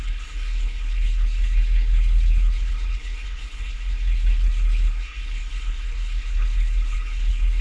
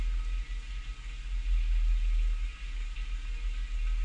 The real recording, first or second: second